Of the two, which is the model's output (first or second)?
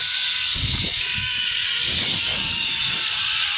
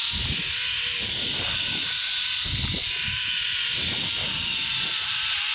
first